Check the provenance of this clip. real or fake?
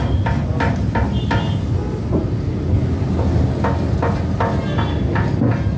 real